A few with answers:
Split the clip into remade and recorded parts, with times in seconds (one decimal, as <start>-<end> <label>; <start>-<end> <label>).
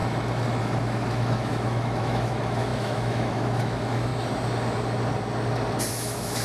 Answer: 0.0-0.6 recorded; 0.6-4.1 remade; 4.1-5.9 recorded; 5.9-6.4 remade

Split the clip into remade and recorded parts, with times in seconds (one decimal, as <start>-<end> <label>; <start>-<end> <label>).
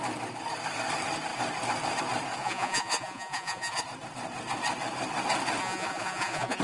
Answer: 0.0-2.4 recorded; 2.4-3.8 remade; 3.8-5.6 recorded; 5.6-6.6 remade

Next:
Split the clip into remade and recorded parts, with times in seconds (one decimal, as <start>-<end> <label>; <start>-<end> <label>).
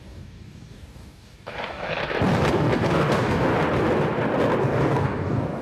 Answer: 0.0-2.0 remade; 2.0-2.5 recorded; 2.5-3.5 remade; 3.5-4.6 recorded; 4.6-5.6 remade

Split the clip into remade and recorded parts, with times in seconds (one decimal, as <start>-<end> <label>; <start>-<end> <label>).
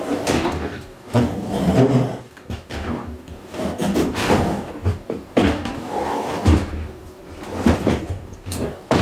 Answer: 0.0-1.6 remade; 1.6-2.2 recorded; 2.2-7.2 remade; 7.2-7.8 recorded; 7.8-9.0 remade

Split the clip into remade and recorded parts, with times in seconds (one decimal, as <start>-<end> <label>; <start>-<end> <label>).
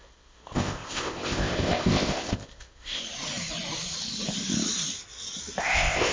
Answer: 0.0-3.0 remade; 3.0-5.6 recorded; 5.6-6.1 remade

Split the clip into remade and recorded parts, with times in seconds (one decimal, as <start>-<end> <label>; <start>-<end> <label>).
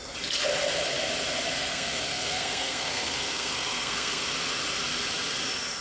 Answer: 0.0-1.7 recorded; 1.7-4.2 remade; 4.2-5.8 recorded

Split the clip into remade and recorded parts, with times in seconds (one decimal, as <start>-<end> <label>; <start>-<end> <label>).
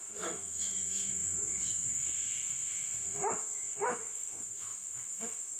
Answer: 0.0-5.6 remade